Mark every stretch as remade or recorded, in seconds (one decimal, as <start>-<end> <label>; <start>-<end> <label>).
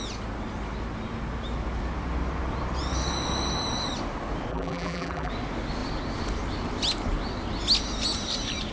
0.0-4.5 recorded; 4.5-5.3 remade; 5.3-8.7 recorded